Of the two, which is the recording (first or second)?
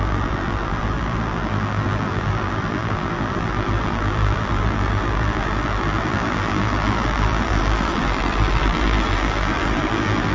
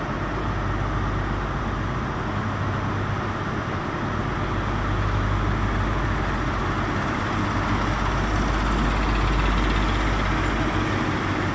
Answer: second